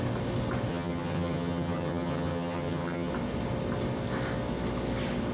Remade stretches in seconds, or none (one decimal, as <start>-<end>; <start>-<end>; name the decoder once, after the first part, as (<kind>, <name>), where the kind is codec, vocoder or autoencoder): 0.7-3.1 (vocoder, HiFi-GAN)